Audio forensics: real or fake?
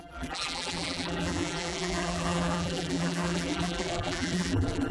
fake